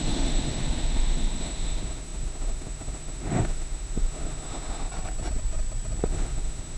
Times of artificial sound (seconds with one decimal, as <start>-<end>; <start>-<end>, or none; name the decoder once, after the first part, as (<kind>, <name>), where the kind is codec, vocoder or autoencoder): 0.0-4.9 (autoencoder, DAC-VAE); 6.1-6.8